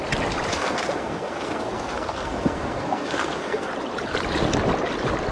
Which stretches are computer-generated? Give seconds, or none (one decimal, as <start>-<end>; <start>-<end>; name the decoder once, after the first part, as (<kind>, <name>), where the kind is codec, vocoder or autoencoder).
0.5-3.7 (codec, SNAC)

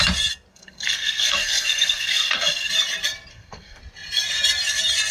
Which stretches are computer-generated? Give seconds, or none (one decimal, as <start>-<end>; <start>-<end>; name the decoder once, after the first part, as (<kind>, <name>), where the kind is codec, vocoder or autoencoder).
0.5-2.7 (codec, SNAC); 3.3-3.8

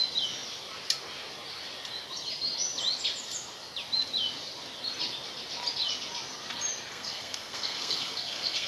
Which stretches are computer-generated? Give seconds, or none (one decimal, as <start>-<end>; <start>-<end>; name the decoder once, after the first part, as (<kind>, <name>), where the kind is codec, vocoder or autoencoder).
6.9-8.7 (codec, SNAC)

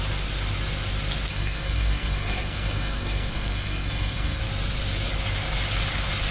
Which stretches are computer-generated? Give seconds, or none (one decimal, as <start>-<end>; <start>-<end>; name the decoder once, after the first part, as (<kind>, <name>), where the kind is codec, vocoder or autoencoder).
1.3-4.4 (codec, SNAC)

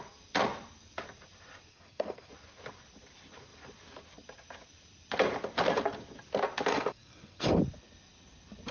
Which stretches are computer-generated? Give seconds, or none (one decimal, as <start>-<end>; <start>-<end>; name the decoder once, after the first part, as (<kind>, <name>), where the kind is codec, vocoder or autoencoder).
1.7-2.3 (codec, SNAC); 6.7-7.6